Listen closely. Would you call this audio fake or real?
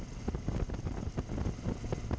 real